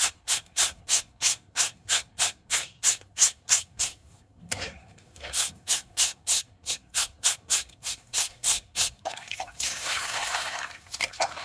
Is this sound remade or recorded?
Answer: remade